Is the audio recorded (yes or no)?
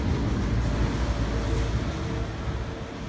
yes